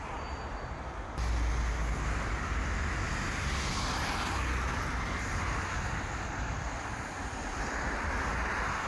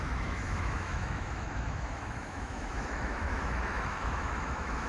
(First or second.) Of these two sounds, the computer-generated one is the second